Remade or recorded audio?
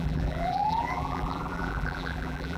remade